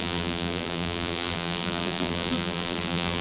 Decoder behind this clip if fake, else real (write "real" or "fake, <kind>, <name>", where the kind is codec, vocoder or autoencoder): fake, vocoder, BigVGAN v2